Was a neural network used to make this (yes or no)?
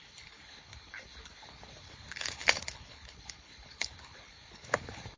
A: yes